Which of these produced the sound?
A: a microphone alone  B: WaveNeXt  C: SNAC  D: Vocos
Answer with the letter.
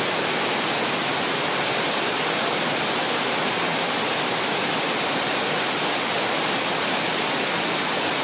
A